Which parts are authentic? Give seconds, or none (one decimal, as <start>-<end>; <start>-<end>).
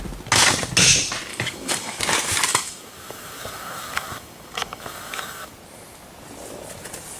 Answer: 0.0-1.3; 2.0-2.5; 5.5-7.2